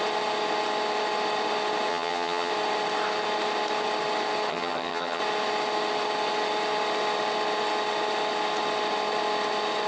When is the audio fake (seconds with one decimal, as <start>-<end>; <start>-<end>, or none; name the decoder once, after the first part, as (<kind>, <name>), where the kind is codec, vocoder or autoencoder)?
1.9-2.5 (vocoder, HiFi-GAN); 4.5-5.2